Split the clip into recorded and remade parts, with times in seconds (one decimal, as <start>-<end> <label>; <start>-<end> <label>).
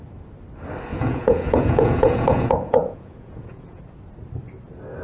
0.0-0.9 recorded; 0.9-3.8 remade; 3.8-5.0 recorded